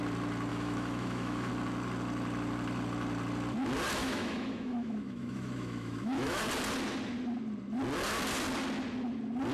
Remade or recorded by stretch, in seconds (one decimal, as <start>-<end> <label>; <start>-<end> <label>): 0.0-0.5 recorded; 0.5-1.5 remade; 1.5-4.0 recorded; 4.0-6.4 remade; 6.4-9.5 recorded